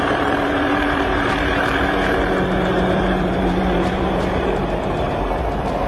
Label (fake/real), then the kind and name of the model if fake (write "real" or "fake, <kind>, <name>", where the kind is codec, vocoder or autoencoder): fake, vocoder, BigVGAN v2